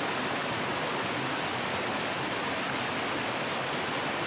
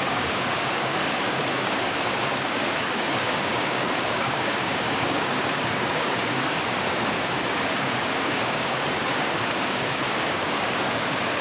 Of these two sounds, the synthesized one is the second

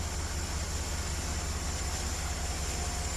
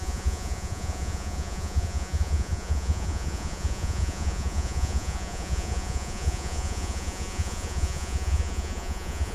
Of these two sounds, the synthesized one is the second